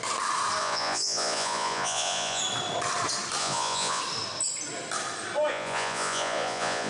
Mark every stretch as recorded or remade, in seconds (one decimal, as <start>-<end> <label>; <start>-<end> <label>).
0.0-0.6 recorded; 0.6-2.4 remade; 2.4-3.4 recorded; 3.4-4.0 remade; 4.0-5.5 recorded; 5.5-6.9 remade